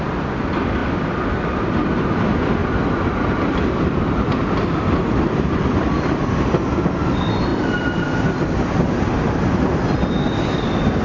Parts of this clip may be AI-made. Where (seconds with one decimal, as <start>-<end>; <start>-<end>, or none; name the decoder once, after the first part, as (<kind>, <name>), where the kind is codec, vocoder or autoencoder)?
0.8-2.1 (vocoder, BigVGAN v2); 2.6-5.9